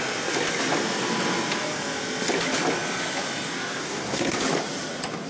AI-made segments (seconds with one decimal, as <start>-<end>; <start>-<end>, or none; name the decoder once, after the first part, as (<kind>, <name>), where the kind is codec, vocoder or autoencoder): 3.8-4.4 (codec, SNAC)